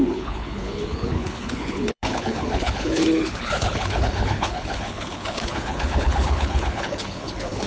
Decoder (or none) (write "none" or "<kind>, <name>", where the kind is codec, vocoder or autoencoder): codec, HILCodec